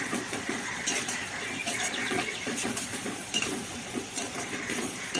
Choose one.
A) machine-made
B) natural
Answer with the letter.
A